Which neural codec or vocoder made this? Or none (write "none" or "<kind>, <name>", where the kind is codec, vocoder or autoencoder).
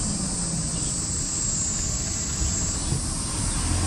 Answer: none